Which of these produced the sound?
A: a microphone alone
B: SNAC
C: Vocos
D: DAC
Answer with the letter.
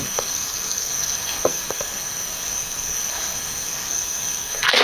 B